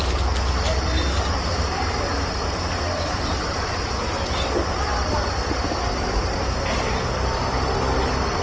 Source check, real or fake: real